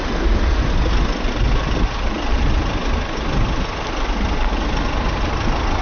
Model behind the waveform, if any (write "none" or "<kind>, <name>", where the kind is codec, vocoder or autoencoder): none